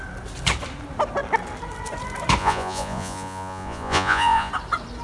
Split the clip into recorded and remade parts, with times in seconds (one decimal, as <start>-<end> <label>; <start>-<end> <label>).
0.0-2.4 recorded; 2.4-4.5 remade; 4.5-5.0 recorded